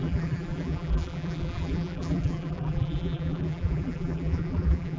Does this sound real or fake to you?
fake